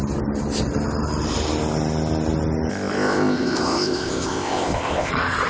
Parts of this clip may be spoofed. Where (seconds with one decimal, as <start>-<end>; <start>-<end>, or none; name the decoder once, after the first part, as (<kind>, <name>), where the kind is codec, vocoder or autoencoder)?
2.7-5.1 (codec, ZipCodec)